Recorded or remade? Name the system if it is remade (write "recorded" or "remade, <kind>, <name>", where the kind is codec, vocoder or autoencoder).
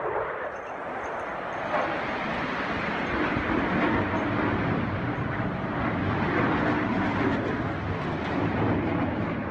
recorded